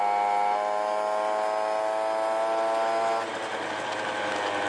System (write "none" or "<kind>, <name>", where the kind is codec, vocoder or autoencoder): none